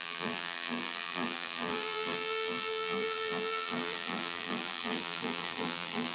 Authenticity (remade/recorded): remade